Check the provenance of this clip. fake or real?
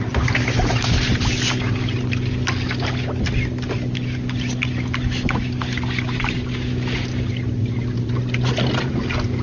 real